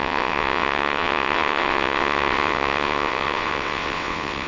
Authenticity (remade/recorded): remade